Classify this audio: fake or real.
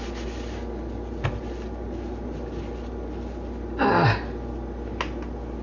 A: real